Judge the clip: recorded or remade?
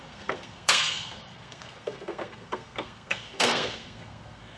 remade